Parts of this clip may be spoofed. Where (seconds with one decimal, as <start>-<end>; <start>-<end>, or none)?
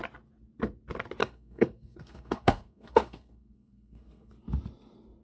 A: 1.2-4.3